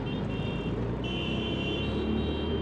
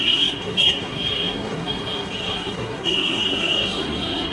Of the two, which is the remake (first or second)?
second